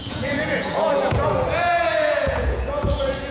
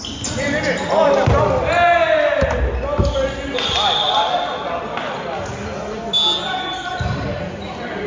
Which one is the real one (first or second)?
second